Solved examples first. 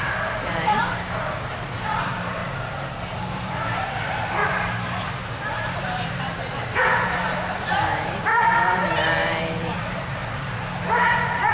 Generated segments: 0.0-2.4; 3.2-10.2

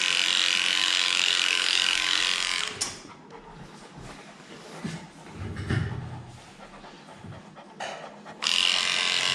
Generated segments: 0.8-2.2; 3.5-4.8

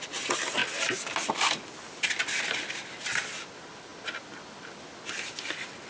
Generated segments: none